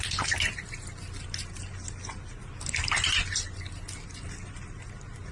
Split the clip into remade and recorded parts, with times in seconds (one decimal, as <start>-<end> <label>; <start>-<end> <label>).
0.0-5.3 recorded